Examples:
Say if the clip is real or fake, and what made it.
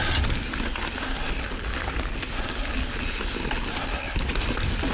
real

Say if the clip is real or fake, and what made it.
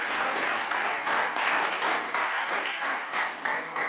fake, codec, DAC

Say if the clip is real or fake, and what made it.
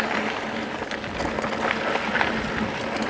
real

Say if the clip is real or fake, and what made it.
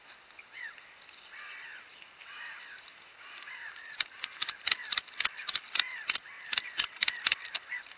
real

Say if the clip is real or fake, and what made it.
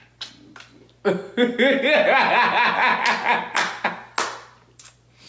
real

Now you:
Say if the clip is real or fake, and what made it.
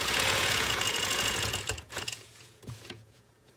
fake, vocoder, Vocos